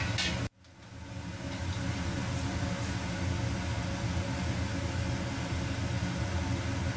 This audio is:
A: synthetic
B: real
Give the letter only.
B